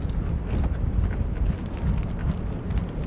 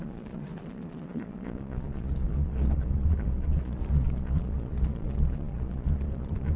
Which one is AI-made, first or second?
second